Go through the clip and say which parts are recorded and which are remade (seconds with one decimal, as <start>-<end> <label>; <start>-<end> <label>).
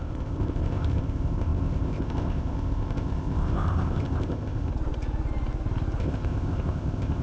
0.0-4.7 remade; 4.7-6.0 recorded; 6.0-7.2 remade